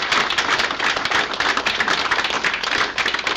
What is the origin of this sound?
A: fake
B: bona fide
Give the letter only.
B